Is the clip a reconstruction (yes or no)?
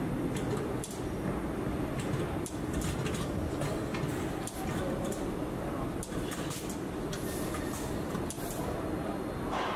no